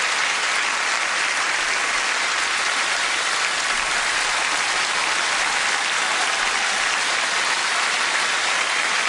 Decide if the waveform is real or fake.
fake